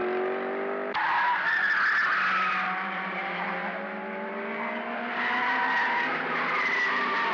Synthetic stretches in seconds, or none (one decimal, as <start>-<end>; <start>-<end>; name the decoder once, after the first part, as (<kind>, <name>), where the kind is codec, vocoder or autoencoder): 1.5-3.2 (vocoder, BigVGAN v2); 6.1-7.3